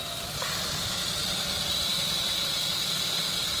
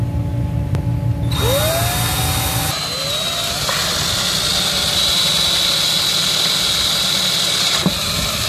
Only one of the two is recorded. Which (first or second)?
second